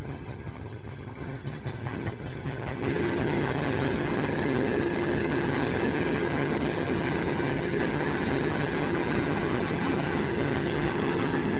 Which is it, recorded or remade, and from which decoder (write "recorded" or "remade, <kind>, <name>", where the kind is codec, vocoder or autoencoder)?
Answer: remade, vocoder, HiFi-GAN